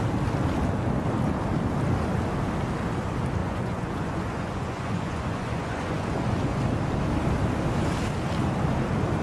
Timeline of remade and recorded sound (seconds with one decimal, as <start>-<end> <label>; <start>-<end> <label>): 0.0-3.4 recorded; 3.4-6.6 remade; 6.6-9.2 recorded